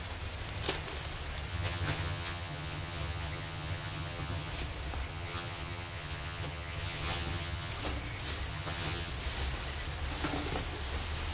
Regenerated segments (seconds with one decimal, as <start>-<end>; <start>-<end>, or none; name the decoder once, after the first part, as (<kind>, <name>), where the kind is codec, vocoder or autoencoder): 1.5-4.5 (vocoder, HiFi-GAN); 5.1-7.7; 8.5-9.1